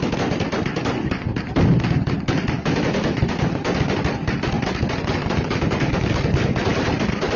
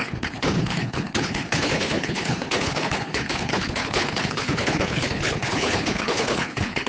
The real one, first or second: first